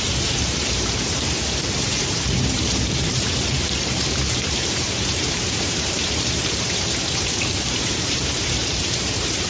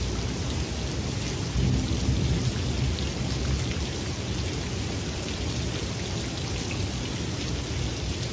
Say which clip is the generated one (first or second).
first